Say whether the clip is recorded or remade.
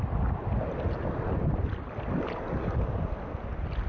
recorded